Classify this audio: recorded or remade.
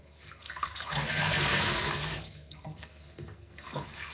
remade